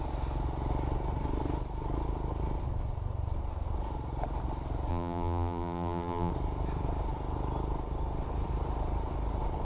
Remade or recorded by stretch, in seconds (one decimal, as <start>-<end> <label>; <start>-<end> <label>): 0.0-4.9 recorded; 4.9-6.3 remade; 6.3-9.6 recorded